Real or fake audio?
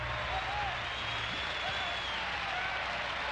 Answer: real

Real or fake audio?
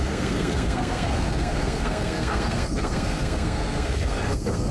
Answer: fake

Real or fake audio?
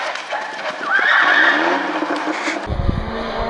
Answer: real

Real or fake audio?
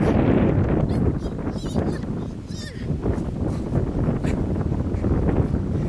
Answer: real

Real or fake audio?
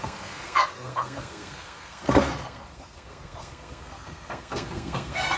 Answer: fake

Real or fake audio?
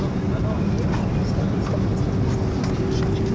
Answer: real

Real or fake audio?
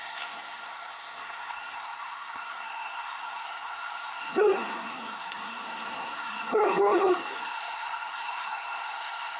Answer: fake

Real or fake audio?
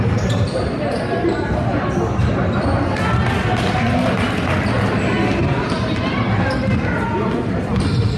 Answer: real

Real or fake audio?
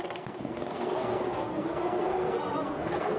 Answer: fake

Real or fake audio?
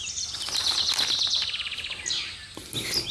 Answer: real